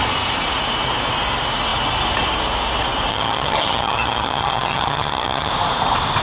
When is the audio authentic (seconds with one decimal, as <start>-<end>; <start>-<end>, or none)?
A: 0.0-3.1; 5.5-6.2